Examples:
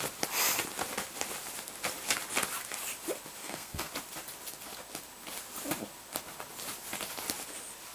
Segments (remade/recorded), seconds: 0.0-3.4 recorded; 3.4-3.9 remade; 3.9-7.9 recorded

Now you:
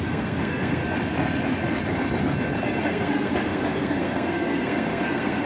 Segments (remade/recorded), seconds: 0.0-0.8 remade; 0.8-2.8 recorded; 2.8-5.5 remade

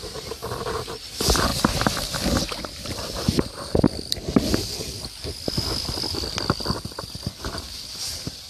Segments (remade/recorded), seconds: 0.0-1.5 recorded; 1.5-3.8 remade; 3.8-8.5 recorded

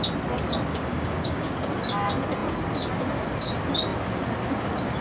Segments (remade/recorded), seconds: 0.0-0.7 recorded; 0.7-1.5 remade; 1.5-5.0 recorded

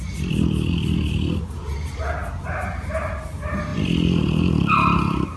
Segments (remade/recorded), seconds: 0.0-5.4 recorded

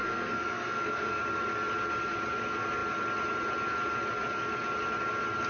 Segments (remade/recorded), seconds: 0.0-1.2 remade; 1.2-5.5 recorded

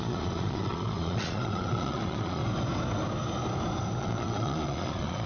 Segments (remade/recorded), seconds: 0.0-2.4 remade; 2.4-4.0 recorded; 4.0-5.3 remade

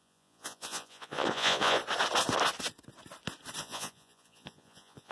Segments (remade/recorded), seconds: 0.0-1.8 remade; 1.8-3.6 recorded; 3.6-5.1 remade